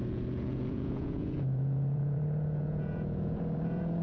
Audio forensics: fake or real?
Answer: fake